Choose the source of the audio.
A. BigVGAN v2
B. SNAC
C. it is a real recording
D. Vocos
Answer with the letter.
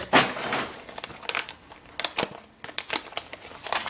C